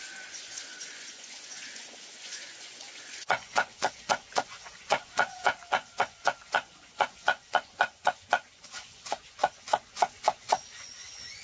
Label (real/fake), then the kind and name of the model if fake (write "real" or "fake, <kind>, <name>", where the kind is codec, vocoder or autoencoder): fake, vocoder, Vocos